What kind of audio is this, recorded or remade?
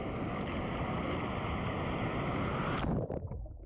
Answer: recorded